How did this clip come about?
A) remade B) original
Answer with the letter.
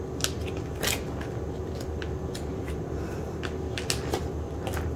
B